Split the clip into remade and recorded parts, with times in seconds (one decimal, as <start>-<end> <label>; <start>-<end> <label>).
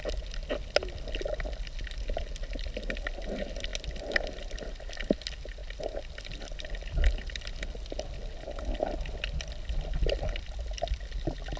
0.0-11.6 recorded